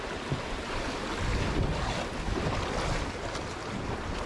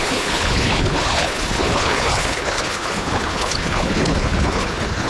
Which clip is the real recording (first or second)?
first